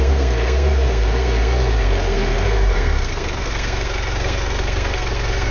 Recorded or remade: remade